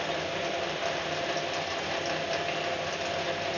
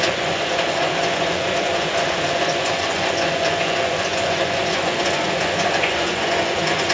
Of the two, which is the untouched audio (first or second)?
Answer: first